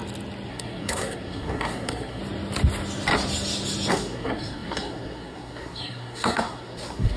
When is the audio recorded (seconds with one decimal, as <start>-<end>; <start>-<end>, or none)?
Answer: 0.0-0.5; 2.2-3.9